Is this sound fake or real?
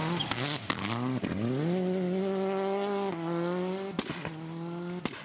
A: real